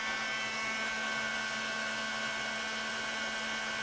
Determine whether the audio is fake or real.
real